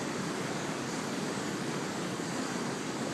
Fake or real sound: fake